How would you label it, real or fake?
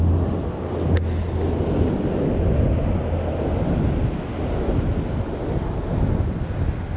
real